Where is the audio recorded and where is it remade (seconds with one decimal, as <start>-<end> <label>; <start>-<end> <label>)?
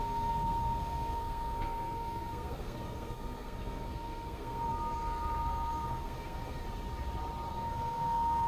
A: 0.0-6.6 remade; 6.6-7.5 recorded; 7.5-8.5 remade